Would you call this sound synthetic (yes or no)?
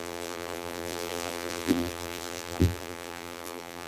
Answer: yes